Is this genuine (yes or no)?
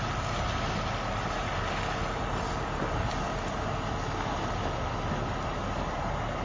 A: yes